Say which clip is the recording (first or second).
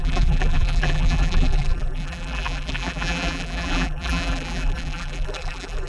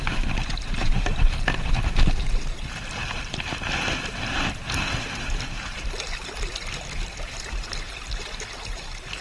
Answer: second